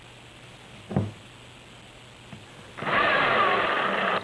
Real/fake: real